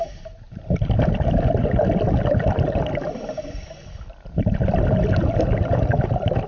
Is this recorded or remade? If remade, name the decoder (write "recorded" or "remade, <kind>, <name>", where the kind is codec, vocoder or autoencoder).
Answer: recorded